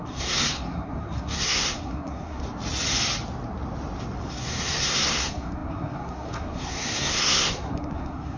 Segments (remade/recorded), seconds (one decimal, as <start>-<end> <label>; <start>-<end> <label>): 0.0-2.4 remade; 2.4-4.3 recorded; 4.3-8.4 remade